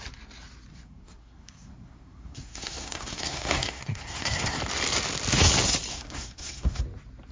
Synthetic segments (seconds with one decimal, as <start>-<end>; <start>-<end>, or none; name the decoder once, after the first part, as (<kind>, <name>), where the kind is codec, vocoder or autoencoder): 0.7-4.6 (codec, SNAC); 5.9-6.8